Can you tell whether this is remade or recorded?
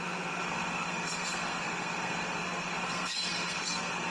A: remade